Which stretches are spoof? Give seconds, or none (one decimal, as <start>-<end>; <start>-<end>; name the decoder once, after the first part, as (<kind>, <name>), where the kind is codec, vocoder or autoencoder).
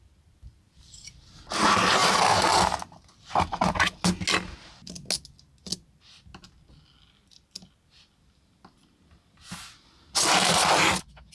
none